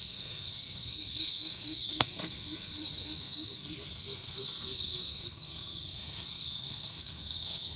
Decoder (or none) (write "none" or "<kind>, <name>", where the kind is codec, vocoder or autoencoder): codec, SNAC